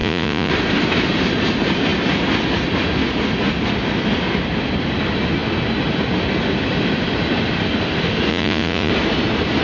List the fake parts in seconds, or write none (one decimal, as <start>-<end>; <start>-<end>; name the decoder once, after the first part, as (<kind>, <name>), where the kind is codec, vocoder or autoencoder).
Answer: 0.0-0.5 (vocoder, Vocos); 8.3-8.9